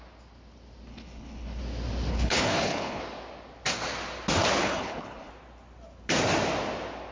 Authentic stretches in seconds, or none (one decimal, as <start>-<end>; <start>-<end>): 0.0-0.9; 1.6-2.1; 3.0-4.6; 5.3-7.1